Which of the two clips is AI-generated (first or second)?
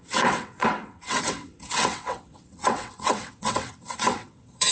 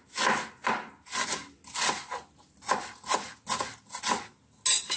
first